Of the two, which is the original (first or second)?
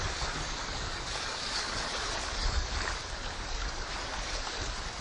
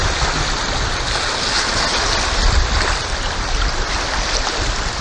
second